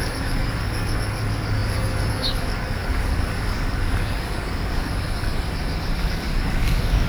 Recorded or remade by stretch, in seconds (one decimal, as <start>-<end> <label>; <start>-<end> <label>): 0.0-5.3 remade; 5.3-6.0 recorded; 6.0-7.1 remade